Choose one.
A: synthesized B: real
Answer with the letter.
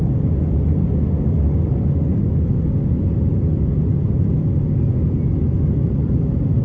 B